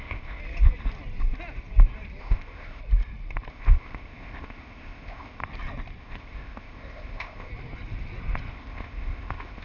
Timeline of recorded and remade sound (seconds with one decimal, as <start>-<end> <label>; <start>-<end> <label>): 0.0-0.4 remade; 0.4-2.2 recorded; 2.2-2.8 remade; 2.8-3.5 recorded; 3.5-5.4 remade; 5.4-6.0 recorded; 6.0-7.5 remade; 7.5-8.5 recorded; 8.5-9.6 remade